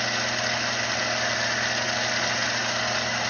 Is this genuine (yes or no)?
yes